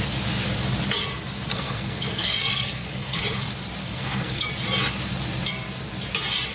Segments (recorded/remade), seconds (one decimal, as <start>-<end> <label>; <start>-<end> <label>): 0.0-1.5 recorded; 1.5-3.2 remade; 3.2-3.8 recorded; 3.8-4.5 remade; 4.5-6.5 recorded